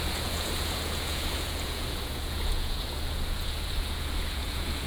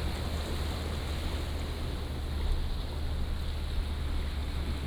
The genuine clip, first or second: second